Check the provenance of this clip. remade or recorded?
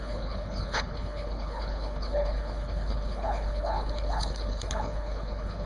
remade